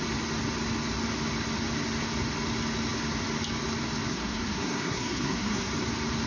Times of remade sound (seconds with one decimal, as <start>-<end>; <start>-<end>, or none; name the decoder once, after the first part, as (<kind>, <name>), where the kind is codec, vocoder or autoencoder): 4.1-5.7 (codec, SNAC)